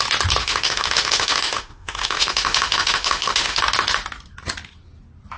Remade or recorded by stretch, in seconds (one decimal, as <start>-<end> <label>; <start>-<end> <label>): 0.0-0.4 recorded; 0.4-3.6 remade; 3.6-5.4 recorded